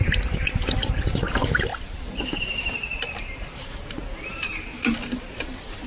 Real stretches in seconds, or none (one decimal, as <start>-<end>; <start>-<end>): 1.7-2.4; 4.7-5.2